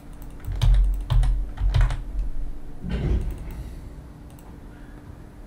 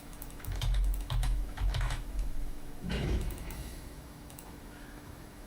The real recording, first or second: first